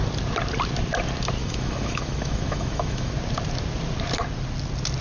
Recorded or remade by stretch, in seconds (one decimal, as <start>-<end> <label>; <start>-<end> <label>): 0.0-1.4 recorded; 1.4-3.1 remade; 3.1-5.0 recorded